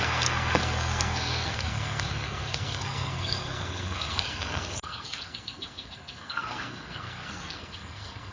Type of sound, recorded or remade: remade